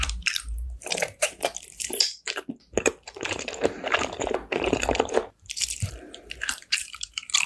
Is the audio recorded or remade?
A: remade